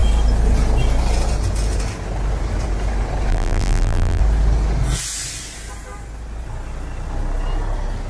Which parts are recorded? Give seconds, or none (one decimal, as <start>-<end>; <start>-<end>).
0.0-3.3; 4.2-8.1